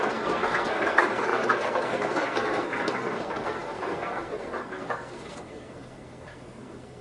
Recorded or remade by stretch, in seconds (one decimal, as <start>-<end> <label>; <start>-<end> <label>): 0.0-7.0 remade